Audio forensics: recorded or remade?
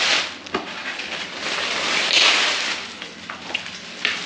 recorded